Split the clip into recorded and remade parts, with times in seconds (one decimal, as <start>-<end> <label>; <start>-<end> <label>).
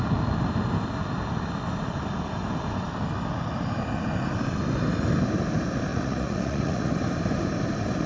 0.0-5.9 recorded; 5.9-6.9 remade; 6.9-8.1 recorded